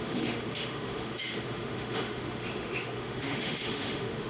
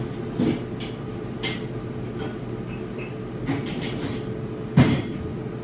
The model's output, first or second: first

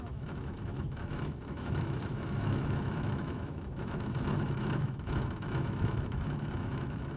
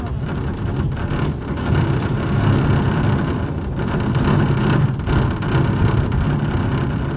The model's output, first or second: first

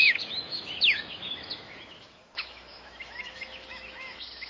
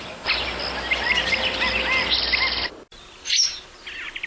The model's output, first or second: first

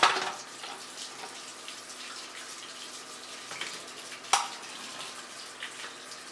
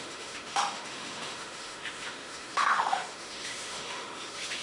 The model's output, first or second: second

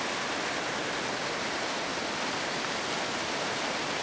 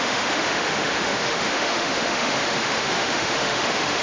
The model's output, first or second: second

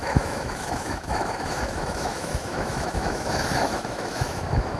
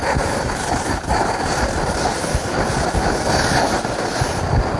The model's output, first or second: first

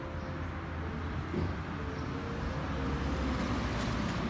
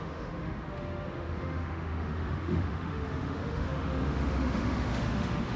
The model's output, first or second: second